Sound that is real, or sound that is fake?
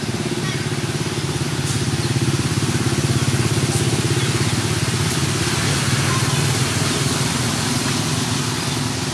real